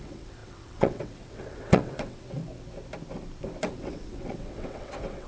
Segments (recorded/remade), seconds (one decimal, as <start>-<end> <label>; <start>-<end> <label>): 0.0-2.4 remade; 2.4-3.6 recorded; 3.6-5.3 remade